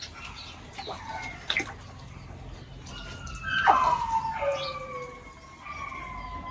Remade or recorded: recorded